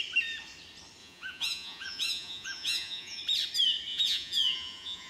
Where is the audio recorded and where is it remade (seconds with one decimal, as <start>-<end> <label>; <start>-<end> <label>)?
0.0-1.0 recorded; 1.0-3.2 remade; 3.2-3.9 recorded; 3.9-5.1 remade